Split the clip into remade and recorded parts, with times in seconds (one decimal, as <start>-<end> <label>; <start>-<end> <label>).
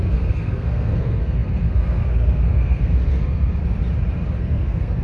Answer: 0.0-3.6 remade; 3.6-4.4 recorded; 4.4-5.0 remade